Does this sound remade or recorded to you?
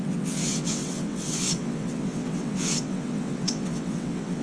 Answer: remade